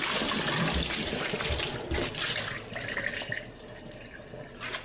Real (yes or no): yes